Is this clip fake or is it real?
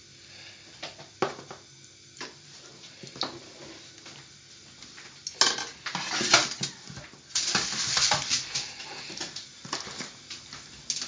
real